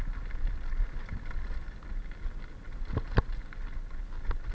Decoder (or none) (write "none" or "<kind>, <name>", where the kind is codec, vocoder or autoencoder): none